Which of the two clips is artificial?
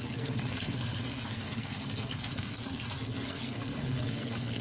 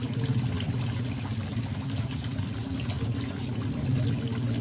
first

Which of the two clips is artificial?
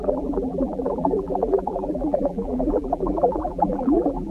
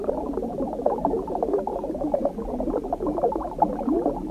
first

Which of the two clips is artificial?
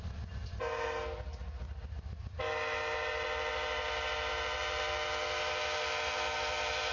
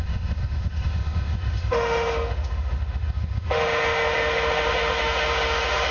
second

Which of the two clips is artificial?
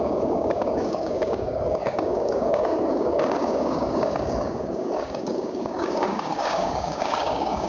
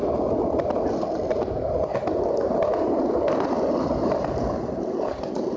first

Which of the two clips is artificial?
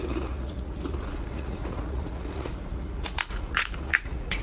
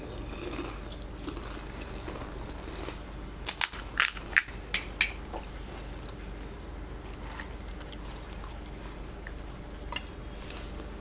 first